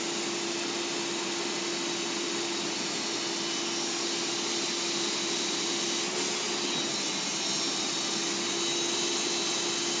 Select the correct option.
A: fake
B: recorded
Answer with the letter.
B